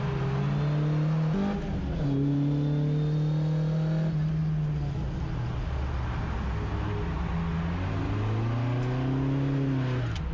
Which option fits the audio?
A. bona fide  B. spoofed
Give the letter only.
A